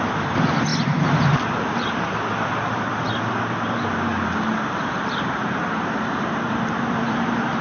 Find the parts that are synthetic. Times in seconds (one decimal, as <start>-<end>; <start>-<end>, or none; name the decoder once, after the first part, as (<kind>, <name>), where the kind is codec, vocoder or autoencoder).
0.0-7.6 (vocoder, BigVGAN v2)